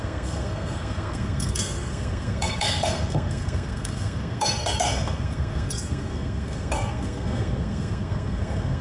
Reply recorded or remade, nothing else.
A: remade